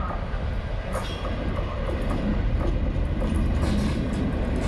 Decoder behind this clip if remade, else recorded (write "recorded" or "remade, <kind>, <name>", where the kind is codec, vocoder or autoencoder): recorded